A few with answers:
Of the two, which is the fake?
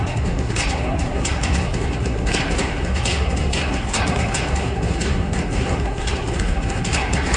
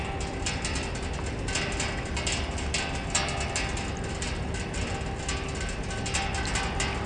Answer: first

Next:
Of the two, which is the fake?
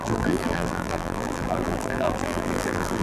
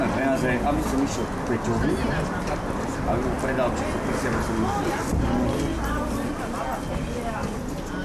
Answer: first